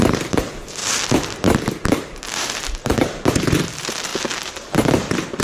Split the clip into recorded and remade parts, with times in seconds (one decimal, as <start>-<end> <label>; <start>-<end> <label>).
0.0-0.8 remade; 0.8-1.7 recorded; 1.7-4.1 remade; 4.1-5.4 recorded

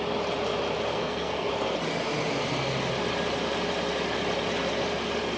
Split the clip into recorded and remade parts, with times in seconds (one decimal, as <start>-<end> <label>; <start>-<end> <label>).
0.0-0.9 recorded; 0.9-1.5 remade; 1.5-5.4 recorded

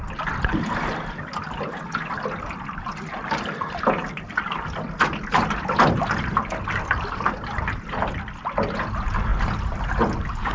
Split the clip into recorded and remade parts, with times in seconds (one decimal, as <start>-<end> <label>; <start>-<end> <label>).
0.0-10.5 recorded

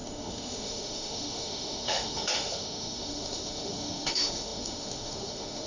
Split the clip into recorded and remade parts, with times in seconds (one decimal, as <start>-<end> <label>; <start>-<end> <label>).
0.0-5.7 remade

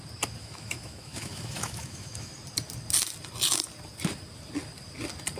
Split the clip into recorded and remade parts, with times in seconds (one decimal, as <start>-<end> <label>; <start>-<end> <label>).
0.0-0.4 recorded; 0.4-2.3 remade; 2.3-5.4 recorded

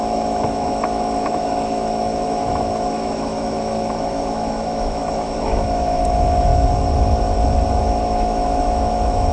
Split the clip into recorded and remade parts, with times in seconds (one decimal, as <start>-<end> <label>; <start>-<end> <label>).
0.0-6.5 remade; 6.5-7.8 recorded; 7.8-9.3 remade

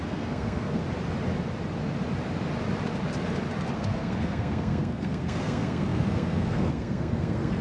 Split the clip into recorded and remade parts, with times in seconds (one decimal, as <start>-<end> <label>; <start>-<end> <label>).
0.0-0.8 remade; 0.8-3.7 recorded; 3.7-7.6 remade